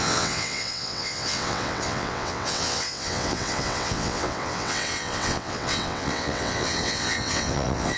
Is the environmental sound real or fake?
fake